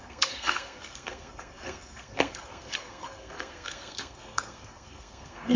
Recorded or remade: remade